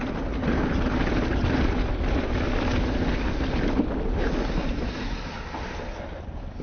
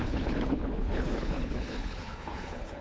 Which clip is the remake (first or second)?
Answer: second